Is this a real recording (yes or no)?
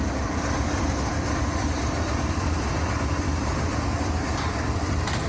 yes